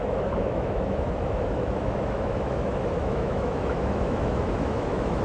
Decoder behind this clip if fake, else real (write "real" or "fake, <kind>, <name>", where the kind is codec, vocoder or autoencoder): fake, autoencoder, DAC-VAE